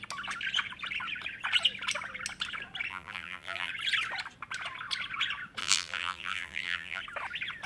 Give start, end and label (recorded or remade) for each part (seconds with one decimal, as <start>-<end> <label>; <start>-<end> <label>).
0.0-2.9 recorded; 2.9-3.7 remade; 3.7-5.6 recorded; 5.6-7.0 remade; 7.0-7.7 recorded